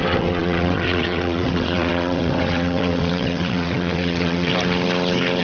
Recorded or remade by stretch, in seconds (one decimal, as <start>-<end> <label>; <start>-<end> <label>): 0.0-4.5 remade; 4.5-5.4 recorded